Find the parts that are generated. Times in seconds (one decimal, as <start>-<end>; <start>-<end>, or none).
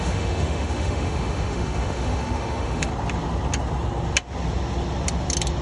0.0-2.9